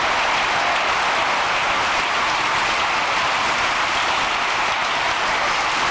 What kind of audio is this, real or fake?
real